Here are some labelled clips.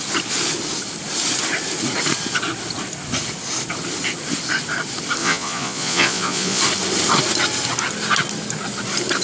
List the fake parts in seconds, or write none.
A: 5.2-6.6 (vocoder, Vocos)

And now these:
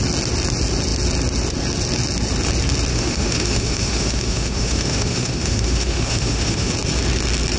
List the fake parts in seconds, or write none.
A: 2.9-6.7 (autoencoder, DAC-VAE)

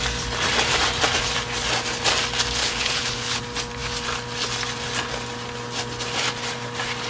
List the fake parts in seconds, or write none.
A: 2.6-3.4 (codec, HILCodec)

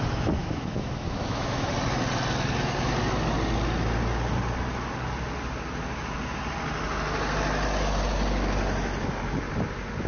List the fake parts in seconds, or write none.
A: 0.4-1.7 (autoencoder, DAC-VAE)

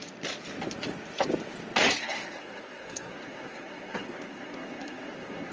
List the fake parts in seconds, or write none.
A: 2.0-5.5 (codec, SNAC)

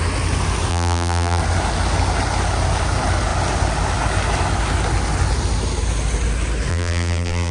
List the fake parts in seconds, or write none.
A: 0.7-1.4 (vocoder, BigVGAN v2); 6.7-7.5

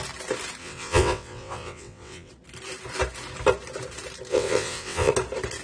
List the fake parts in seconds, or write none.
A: 0.6-2.3 (vocoder, WaveNeXt); 4.3-5.1